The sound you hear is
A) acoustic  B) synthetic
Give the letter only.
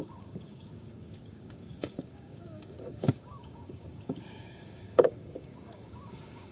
B